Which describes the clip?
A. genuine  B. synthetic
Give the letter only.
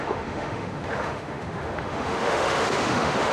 B